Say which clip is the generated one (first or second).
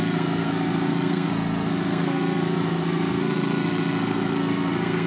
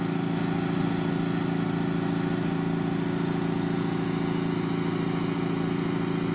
first